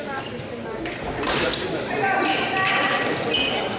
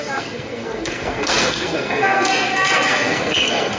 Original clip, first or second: first